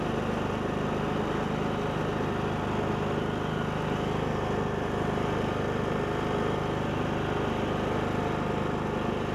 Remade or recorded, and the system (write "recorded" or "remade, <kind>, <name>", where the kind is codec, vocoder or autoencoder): recorded